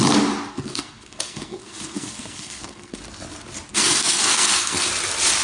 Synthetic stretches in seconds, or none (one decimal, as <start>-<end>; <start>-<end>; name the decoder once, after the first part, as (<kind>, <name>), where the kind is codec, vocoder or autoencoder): 0.5-3.0 (codec, SNAC); 3.7-4.9